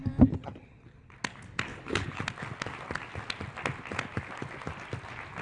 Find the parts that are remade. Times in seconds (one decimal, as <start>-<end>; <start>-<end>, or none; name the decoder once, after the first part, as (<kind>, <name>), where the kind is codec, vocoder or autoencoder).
1.7-2.2 (codec, HILCodec)